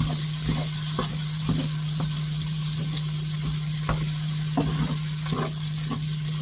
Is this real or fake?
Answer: real